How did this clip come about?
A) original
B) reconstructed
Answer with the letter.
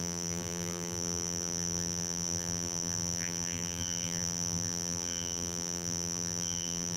B